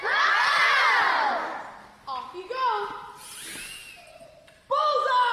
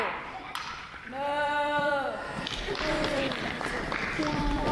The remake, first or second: second